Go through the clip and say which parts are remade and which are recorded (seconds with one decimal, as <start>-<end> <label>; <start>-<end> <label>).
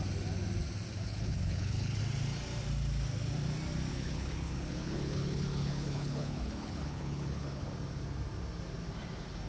0.0-1.1 recorded; 1.1-2.0 remade; 2.0-3.9 recorded; 3.9-7.6 remade; 7.6-9.5 recorded